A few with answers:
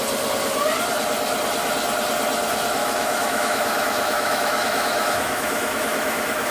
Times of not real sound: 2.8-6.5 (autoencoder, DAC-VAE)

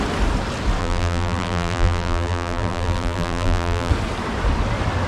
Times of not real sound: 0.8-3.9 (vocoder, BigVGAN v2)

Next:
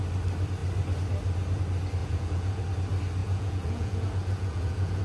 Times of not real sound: 2.0-2.6 (vocoder, Vocos); 3.2-5.0

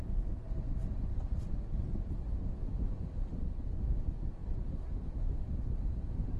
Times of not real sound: 0.0-1.8 (vocoder, BigVGAN v2); 3.3-4.4; 5.4-6.4

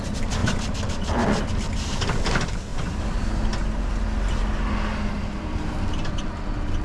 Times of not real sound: 0.0-0.4 (vocoder, BigVGAN v2); 1.5-2.7; 5.1-6.8